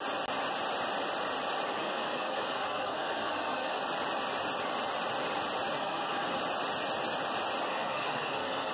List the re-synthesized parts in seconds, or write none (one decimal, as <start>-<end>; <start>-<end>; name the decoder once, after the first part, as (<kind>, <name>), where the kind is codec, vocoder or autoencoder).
1.8-3.8 (codec, SNAC); 5.8-6.4; 7.7-8.7